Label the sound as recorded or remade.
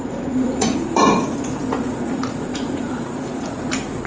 remade